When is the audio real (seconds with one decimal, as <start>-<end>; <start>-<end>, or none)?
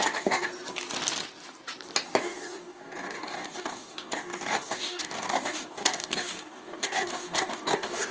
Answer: 0.5-2.2